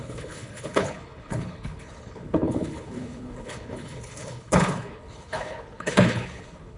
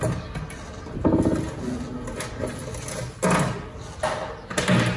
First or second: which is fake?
first